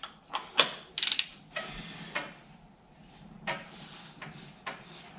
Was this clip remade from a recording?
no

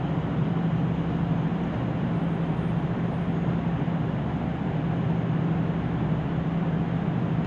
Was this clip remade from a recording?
no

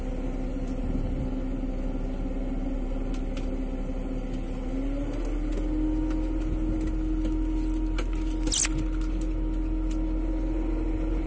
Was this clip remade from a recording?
no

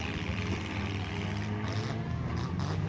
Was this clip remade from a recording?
no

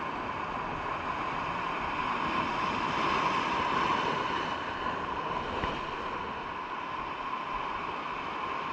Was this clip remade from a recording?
no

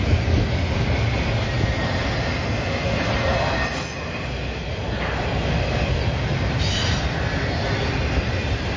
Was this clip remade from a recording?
no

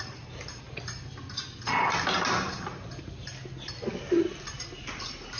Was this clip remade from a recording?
no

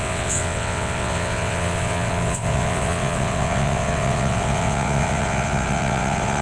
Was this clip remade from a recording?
yes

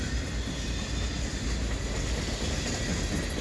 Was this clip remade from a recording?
no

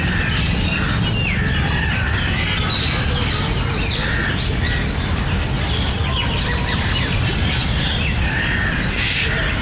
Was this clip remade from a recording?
no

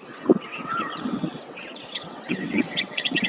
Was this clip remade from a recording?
yes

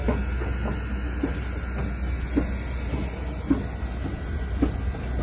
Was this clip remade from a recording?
no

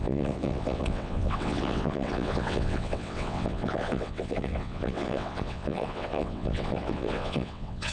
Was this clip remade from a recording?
yes